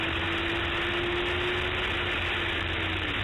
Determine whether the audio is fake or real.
real